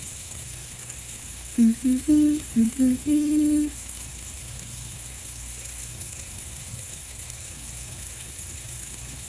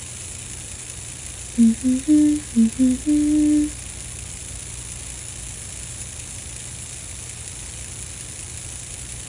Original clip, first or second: second